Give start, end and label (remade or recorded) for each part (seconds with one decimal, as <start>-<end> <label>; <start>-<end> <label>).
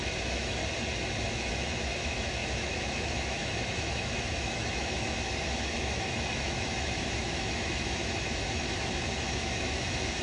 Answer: 0.0-0.6 remade; 0.6-1.3 recorded; 1.3-10.2 remade